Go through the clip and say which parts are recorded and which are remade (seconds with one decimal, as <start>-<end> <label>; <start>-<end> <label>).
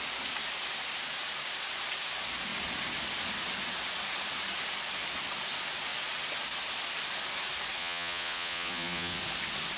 0.0-7.8 recorded; 7.8-9.2 remade; 9.2-9.8 recorded